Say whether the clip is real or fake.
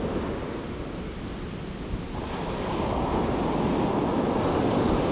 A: real